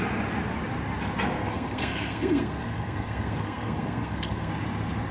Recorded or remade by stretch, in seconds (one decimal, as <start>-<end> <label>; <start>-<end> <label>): 0.0-1.4 recorded; 1.4-4.5 remade; 4.5-5.1 recorded